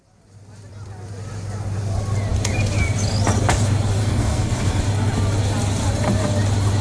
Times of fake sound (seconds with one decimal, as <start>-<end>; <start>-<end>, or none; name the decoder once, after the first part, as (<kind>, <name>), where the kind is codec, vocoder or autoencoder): 4.0-4.8 (codec, SNAC)